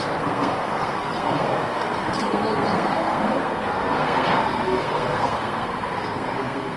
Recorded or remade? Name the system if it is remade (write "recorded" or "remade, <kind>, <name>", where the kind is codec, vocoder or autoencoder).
remade, codec, SNAC